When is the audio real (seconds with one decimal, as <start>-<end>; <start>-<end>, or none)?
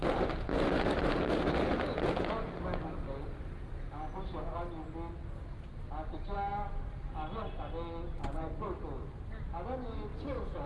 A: 0.0-10.7